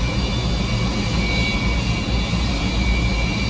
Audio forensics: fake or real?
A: real